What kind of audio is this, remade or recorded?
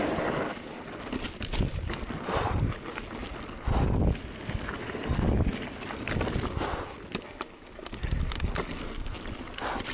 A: recorded